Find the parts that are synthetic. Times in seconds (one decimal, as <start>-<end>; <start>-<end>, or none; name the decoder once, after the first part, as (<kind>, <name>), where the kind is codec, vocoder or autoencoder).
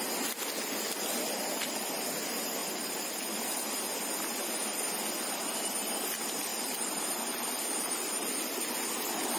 6.5-8.7 (vocoder, BigVGAN v2)